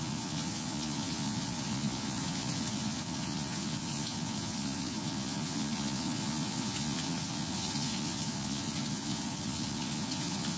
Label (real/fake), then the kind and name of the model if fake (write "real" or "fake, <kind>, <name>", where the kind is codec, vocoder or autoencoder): fake, vocoder, Vocos